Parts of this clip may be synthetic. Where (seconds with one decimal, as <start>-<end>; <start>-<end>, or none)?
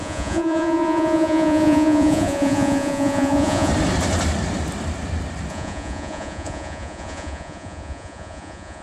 0.0-3.7; 5.5-8.8